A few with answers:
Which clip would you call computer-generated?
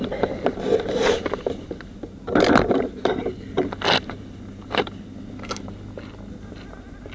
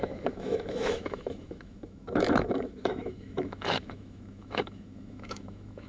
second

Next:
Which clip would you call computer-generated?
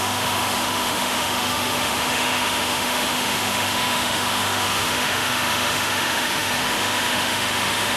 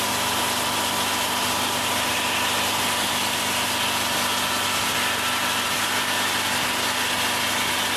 first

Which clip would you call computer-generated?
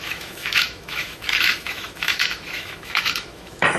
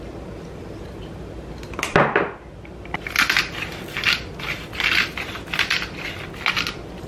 first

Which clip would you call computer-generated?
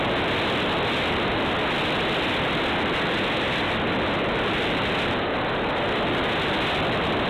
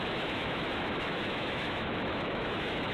second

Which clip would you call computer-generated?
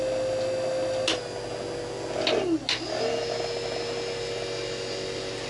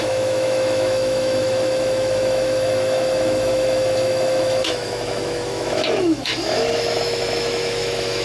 second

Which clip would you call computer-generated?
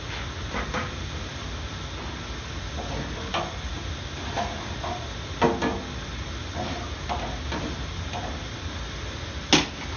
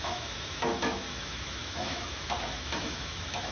second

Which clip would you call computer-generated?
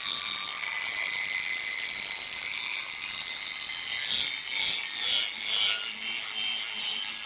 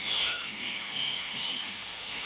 second